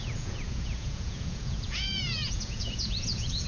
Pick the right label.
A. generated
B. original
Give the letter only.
A